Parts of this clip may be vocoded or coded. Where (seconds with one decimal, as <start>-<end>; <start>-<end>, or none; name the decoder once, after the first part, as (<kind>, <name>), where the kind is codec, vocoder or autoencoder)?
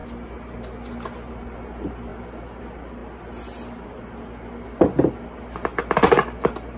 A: none